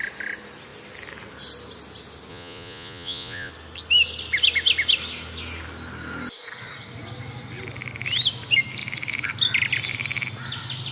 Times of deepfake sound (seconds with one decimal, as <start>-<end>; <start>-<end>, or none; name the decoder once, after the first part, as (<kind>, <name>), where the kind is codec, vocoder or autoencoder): 2.3-3.5 (vocoder, Vocos)